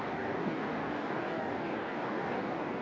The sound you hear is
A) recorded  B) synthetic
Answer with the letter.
B